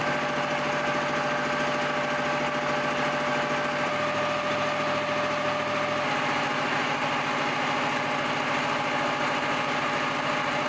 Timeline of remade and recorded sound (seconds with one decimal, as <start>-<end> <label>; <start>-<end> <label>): 0.0-10.7 recorded